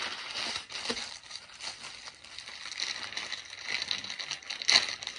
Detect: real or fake real